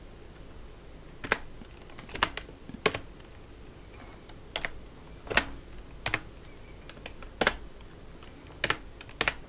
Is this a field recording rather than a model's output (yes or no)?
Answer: yes